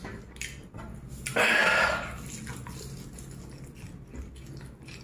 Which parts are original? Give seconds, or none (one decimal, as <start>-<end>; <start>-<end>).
0.0-5.0